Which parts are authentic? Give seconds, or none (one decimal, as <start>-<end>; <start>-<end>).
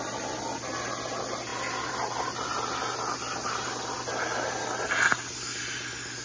0.0-6.2